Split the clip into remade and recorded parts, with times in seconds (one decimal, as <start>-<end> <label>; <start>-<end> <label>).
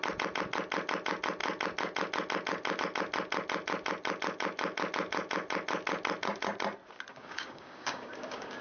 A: 0.0-7.1 recorded; 7.1-8.6 remade